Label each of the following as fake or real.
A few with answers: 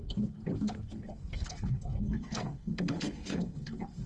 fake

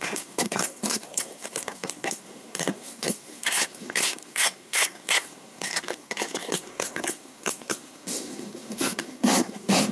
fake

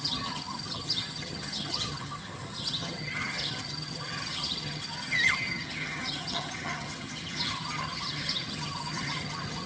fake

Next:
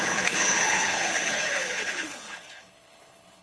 fake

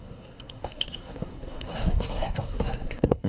fake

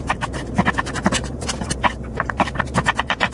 fake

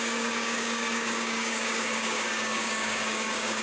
fake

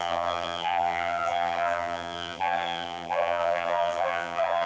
fake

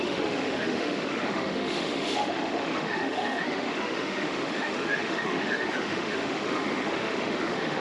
fake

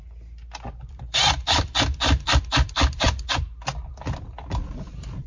fake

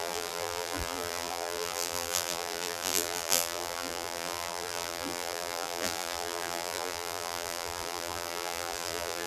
fake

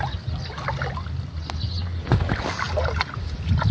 real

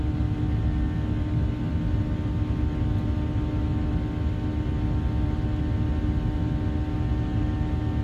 real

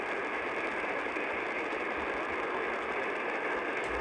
real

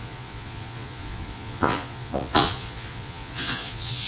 fake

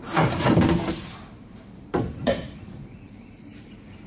fake